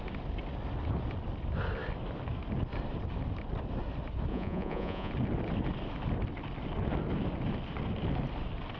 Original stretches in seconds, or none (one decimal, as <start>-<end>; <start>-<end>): 0.0-4.3; 5.1-8.8